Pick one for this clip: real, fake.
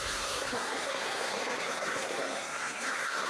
fake